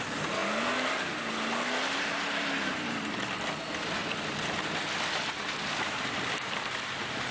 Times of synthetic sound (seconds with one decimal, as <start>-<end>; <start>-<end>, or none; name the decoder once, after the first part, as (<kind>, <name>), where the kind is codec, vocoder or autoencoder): 4.0-5.3 (vocoder, BigVGAN v2)